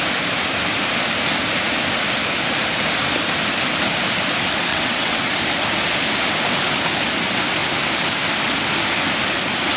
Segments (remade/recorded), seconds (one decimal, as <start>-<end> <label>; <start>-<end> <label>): 0.0-4.7 recorded; 4.7-5.3 remade; 5.3-9.8 recorded